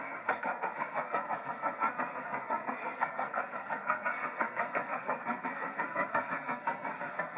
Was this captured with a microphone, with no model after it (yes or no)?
no